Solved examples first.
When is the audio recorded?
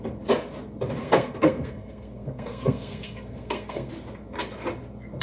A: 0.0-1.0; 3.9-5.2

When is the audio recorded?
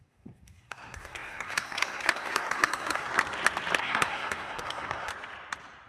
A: 3.1-3.8; 5.1-5.9